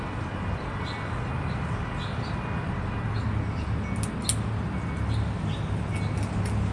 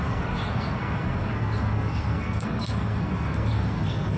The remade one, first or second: second